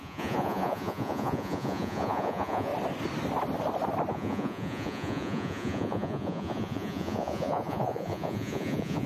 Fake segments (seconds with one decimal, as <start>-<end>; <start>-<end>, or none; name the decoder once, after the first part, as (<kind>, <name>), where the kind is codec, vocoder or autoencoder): 0.0-2.7 (vocoder, Vocos); 4.1-9.1